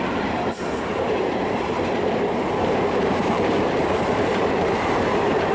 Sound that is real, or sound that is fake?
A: fake